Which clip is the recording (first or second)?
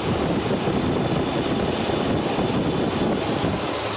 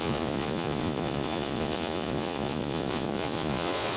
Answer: first